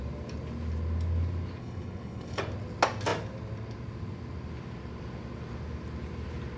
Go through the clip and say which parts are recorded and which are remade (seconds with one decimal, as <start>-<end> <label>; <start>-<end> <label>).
0.0-1.6 recorded; 1.6-2.4 remade; 2.4-6.6 recorded